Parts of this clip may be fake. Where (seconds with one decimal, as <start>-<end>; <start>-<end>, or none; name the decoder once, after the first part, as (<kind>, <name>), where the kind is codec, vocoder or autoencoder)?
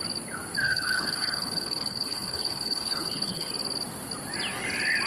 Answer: 0.6-3.5 (codec, HILCodec)